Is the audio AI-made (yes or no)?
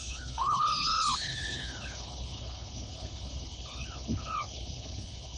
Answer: yes